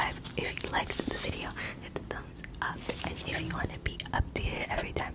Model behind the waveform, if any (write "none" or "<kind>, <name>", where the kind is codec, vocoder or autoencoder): none